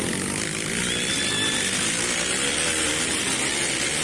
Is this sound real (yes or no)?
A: yes